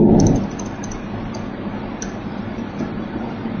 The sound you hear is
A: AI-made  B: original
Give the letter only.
B